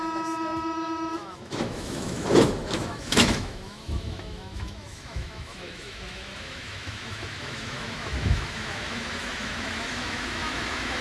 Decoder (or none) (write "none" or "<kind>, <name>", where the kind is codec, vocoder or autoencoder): autoencoder, DAC-VAE